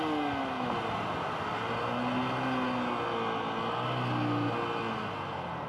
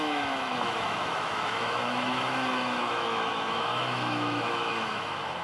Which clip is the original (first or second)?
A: first